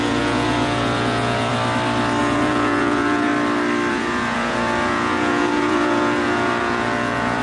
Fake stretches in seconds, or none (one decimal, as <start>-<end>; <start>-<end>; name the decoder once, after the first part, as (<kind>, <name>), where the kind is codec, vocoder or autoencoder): 0.0-1.5 (vocoder, Vocos); 2.2-3.3; 3.9-7.4